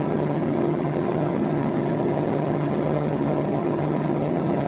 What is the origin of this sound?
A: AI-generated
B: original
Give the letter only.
A